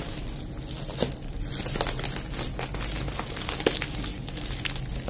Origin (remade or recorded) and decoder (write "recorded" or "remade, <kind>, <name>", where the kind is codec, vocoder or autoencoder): recorded